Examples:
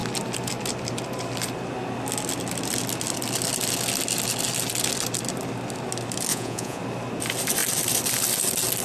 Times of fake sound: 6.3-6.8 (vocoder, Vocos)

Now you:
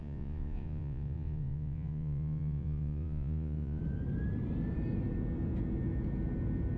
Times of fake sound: 0.0-3.8 (vocoder, Vocos)